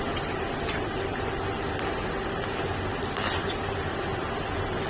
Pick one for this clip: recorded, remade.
recorded